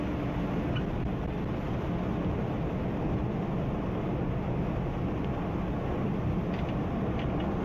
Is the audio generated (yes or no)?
no